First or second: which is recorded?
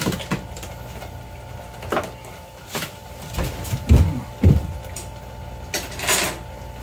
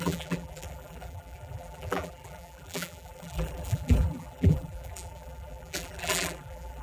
first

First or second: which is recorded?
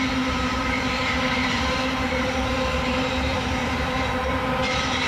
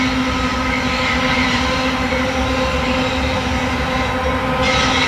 second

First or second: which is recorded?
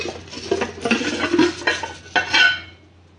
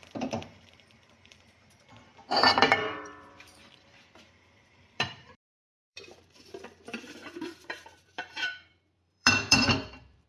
first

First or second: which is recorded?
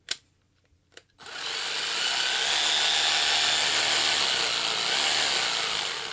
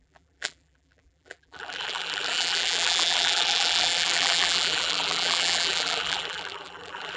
first